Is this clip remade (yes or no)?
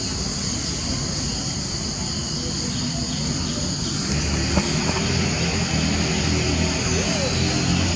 no